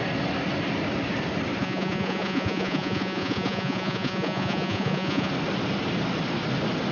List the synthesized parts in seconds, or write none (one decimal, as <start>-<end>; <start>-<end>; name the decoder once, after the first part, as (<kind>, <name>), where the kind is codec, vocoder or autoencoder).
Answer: 1.6-5.3 (vocoder, Vocos)